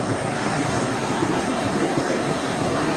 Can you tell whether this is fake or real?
fake